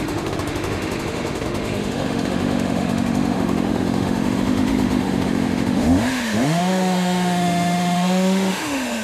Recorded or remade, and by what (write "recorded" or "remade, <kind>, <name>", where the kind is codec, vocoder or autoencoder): remade, autoencoder, DAC-VAE